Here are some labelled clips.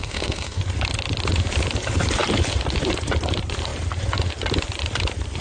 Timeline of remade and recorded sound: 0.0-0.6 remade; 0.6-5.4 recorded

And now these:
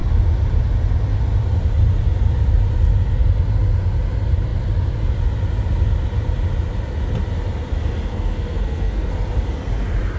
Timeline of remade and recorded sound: 0.0-8.1 recorded; 8.1-9.1 remade; 9.1-10.2 recorded

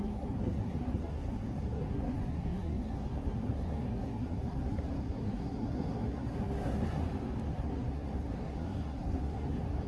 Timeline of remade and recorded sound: 0.0-7.0 remade; 7.0-7.5 recorded; 7.5-9.9 remade

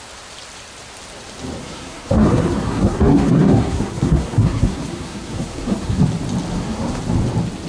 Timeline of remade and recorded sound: 0.0-1.6 recorded; 1.6-6.0 remade; 6.0-6.5 recorded; 6.5-7.0 remade; 7.0-7.7 recorded

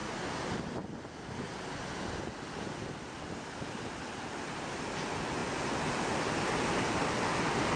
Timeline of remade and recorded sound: 0.0-7.8 recorded

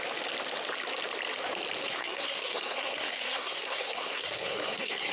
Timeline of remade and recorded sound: 0.0-1.8 recorded; 1.8-5.1 remade